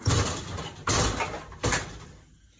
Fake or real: real